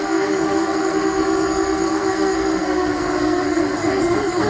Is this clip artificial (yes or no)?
yes